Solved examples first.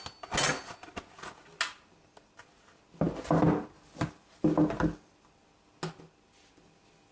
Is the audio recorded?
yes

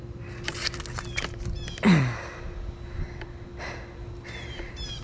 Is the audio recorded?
yes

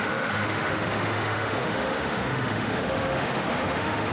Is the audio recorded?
no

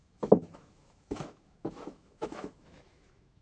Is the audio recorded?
no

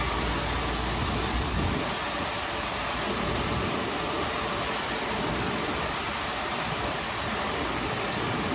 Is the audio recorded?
yes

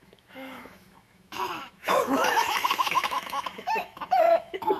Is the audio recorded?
no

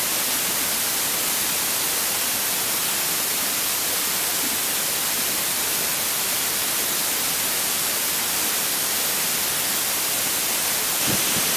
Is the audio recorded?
yes